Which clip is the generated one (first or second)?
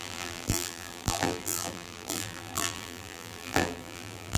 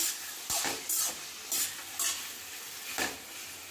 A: first